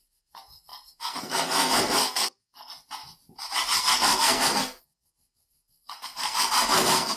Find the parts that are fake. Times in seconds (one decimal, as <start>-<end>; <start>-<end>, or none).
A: 0.0-2.7; 3.8-7.2